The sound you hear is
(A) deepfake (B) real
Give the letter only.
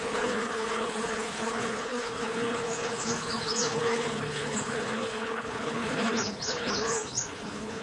A